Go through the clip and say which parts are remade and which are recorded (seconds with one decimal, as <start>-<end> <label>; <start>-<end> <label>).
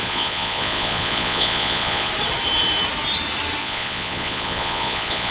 0.0-2.1 remade; 2.1-3.6 recorded; 3.6-5.3 remade